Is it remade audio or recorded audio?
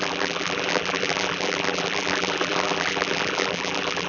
remade